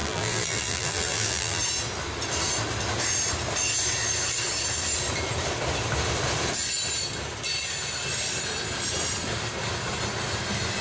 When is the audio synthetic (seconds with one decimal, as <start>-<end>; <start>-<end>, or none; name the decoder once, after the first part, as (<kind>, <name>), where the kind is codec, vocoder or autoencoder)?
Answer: 0.0-1.6 (vocoder, BigVGAN v2)